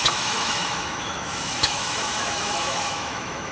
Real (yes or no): no